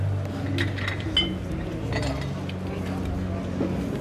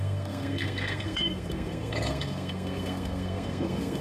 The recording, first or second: first